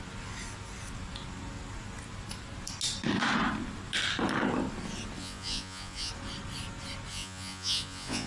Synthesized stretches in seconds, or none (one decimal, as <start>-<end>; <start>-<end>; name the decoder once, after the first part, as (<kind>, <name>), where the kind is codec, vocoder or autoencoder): 5.2-6.1 (vocoder, Vocos); 7.1-8.3